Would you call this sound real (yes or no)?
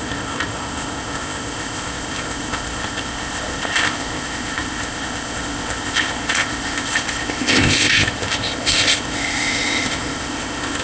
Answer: no